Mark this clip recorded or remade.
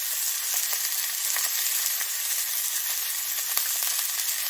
recorded